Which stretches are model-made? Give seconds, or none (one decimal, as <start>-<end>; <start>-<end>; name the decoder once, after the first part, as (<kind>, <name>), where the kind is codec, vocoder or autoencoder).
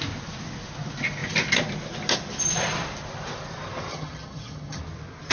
3.9-4.8 (vocoder, HiFi-GAN)